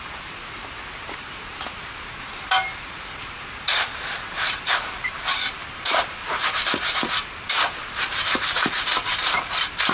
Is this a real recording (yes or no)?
no